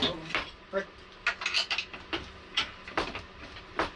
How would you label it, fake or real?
real